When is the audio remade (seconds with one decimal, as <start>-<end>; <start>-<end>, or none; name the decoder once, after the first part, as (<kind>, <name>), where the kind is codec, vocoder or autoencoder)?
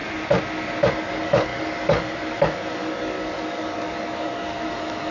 0.9-5.1 (codec, DAC)